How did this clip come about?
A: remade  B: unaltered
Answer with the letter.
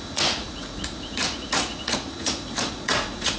A